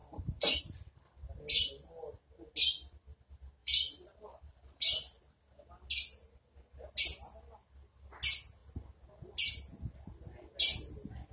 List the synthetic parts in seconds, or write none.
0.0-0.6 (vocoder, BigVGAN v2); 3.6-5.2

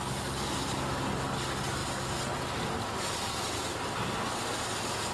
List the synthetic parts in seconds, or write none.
0.0-1.8 (vocoder, BigVGAN v2); 3.8-5.1

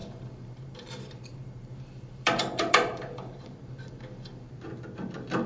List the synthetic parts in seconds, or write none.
0.0-3.3 (vocoder, BigVGAN v2)

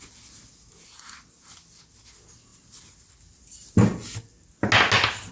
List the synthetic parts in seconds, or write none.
none